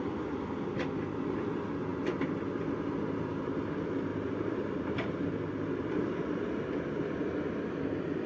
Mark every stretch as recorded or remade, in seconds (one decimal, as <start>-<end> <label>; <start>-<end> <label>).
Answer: 0.0-4.1 recorded; 4.1-5.5 remade; 5.5-8.3 recorded

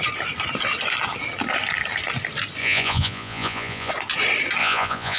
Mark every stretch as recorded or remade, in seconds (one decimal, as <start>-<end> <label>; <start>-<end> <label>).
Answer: 0.0-2.6 recorded; 2.6-3.9 remade; 3.9-4.6 recorded; 4.6-5.2 remade

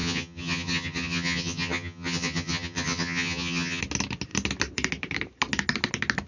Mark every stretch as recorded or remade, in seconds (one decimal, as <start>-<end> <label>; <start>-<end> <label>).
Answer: 0.0-3.8 remade; 3.8-6.3 recorded

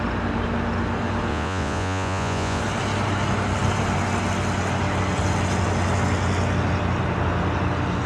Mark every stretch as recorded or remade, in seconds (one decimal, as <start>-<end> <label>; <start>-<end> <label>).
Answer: 0.0-1.3 recorded; 1.3-2.6 remade; 2.6-8.1 recorded

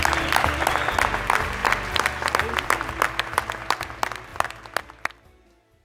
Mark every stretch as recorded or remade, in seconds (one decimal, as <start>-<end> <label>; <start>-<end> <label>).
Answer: 0.0-5.8 recorded

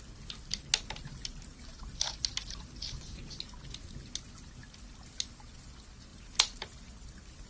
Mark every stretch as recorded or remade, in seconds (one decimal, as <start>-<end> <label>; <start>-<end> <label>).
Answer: 0.0-6.1 recorded; 6.1-7.5 remade

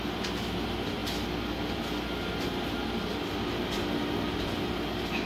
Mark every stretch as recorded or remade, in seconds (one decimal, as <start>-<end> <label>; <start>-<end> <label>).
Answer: 0.0-5.3 recorded